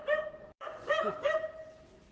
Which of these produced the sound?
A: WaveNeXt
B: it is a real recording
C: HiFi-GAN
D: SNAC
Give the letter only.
B